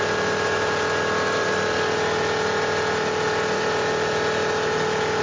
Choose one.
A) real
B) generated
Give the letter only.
A